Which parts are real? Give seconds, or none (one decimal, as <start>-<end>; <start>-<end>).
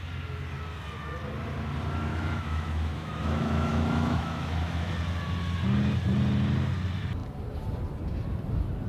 0.0-2.1; 4.9-8.9